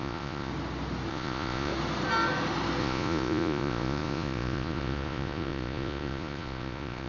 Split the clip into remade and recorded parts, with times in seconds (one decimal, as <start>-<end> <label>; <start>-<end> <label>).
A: 0.0-0.5 remade; 0.5-1.1 recorded; 1.1-1.7 remade; 1.7-2.8 recorded; 2.8-7.1 remade